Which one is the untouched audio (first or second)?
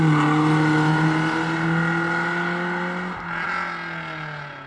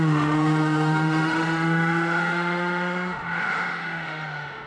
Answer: first